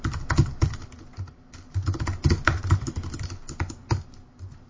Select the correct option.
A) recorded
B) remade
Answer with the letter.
A